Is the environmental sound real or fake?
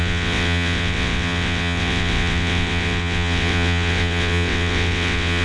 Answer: fake